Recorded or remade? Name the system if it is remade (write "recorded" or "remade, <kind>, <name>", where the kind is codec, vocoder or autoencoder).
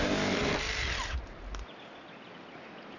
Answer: recorded